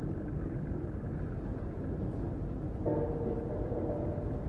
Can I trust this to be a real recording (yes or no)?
yes